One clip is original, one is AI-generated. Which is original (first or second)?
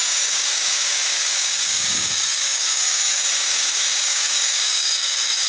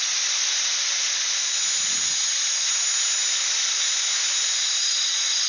second